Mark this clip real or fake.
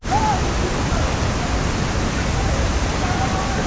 real